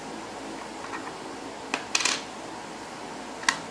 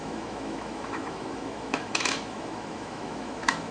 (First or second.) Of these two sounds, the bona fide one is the first